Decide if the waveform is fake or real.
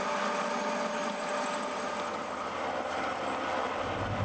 real